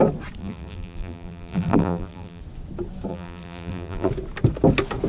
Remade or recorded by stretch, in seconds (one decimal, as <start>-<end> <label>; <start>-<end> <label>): 0.0-0.4 recorded; 0.4-2.4 remade; 2.4-3.1 recorded; 3.1-4.1 remade; 4.1-5.1 recorded